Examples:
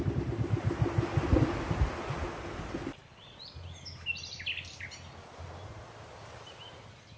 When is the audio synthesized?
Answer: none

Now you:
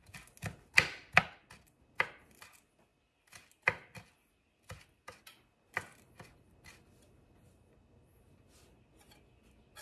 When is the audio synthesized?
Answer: none